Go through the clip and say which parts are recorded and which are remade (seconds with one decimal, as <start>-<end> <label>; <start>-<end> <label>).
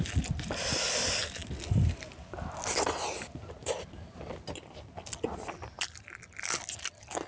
0.0-7.3 recorded